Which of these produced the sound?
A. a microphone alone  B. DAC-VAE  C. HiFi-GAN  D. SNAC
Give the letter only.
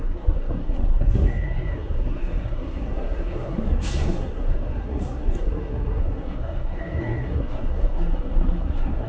D